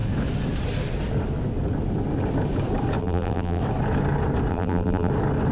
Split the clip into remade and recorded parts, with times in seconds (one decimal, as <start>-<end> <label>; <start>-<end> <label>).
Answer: 0.0-3.0 recorded; 3.0-3.6 remade; 3.6-4.5 recorded; 4.5-5.1 remade; 5.1-5.5 recorded